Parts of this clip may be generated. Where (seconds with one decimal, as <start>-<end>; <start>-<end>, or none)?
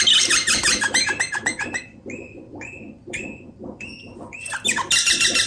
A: 1.3-4.5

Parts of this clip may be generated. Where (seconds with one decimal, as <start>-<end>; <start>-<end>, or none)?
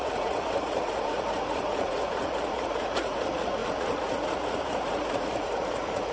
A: 0.0-6.1